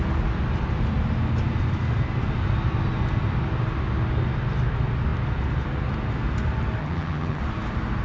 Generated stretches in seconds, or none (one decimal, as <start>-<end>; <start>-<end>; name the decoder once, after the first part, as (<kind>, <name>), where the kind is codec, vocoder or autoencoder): 6.8-7.4 (vocoder, HiFi-GAN)